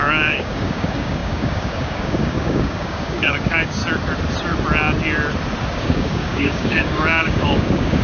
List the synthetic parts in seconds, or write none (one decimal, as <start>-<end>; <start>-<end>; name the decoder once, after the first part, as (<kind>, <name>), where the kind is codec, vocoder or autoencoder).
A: 0.0-3.8 (codec, DAC); 5.7-8.0